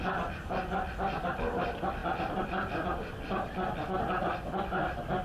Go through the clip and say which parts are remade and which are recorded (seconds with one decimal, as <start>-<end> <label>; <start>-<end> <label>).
0.0-5.2 recorded